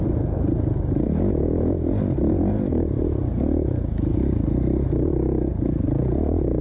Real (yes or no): yes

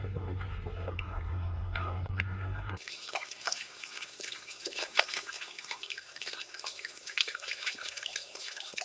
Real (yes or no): no